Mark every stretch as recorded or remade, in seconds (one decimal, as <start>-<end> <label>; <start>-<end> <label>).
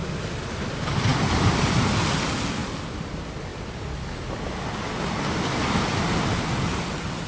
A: 0.0-1.1 recorded; 1.1-1.8 remade; 1.8-2.6 recorded; 2.6-3.1 remade; 3.1-3.5 recorded; 3.5-4.4 remade; 4.4-7.3 recorded